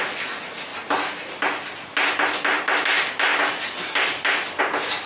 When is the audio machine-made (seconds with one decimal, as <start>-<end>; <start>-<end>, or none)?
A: none